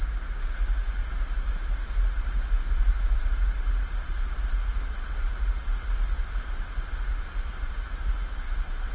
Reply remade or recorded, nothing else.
recorded